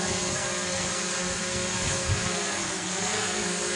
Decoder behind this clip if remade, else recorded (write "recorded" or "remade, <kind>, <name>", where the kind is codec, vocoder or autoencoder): remade, codec, SNAC